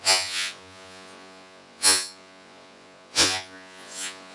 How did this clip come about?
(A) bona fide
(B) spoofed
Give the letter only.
B